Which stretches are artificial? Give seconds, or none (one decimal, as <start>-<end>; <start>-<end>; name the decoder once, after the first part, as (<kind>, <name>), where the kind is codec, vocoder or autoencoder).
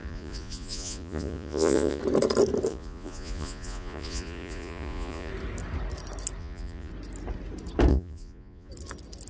0.0-2.0 (vocoder, Vocos); 2.7-5.3; 6.4-6.9; 7.9-8.7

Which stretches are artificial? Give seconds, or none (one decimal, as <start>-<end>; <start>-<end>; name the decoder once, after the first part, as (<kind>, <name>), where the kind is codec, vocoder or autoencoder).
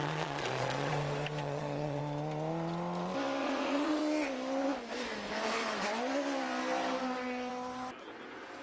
0.0-0.9 (vocoder, Vocos); 1.4-2.0; 3.4-4.0